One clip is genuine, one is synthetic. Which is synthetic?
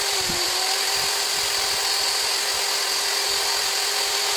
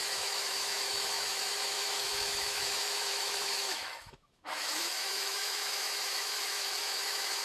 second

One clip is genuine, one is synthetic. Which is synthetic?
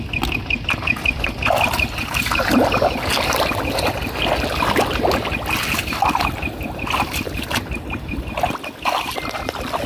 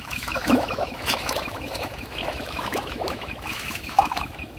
second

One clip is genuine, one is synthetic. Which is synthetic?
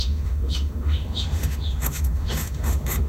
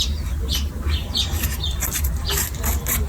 first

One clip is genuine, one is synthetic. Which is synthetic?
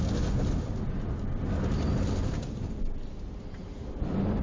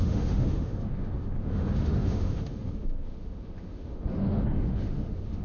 second